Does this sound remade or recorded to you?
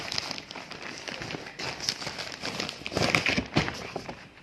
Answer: recorded